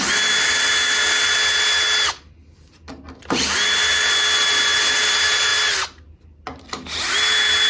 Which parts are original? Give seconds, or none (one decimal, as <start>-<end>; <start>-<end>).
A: 0.0-7.7